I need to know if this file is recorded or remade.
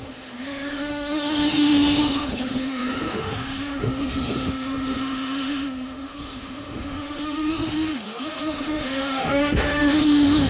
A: remade